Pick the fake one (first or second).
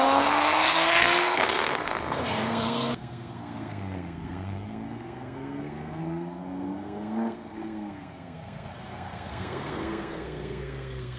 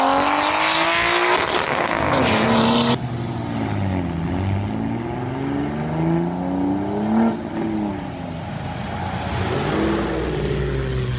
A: first